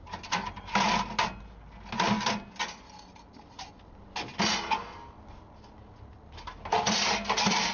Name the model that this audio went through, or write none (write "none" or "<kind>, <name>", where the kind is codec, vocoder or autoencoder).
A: none